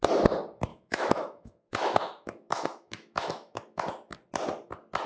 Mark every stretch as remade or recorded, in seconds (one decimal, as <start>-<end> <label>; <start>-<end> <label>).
0.0-0.7 recorded; 0.7-3.8 remade; 3.8-5.1 recorded